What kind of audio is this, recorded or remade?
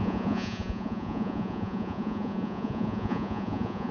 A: remade